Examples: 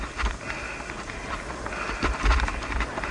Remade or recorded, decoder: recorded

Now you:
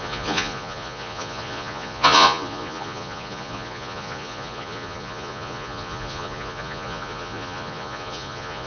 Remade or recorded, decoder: remade, vocoder, Vocos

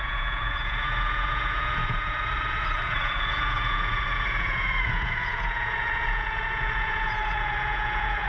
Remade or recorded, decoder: remade, vocoder, Vocos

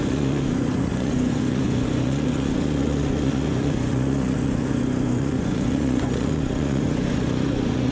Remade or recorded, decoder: remade, vocoder, Vocos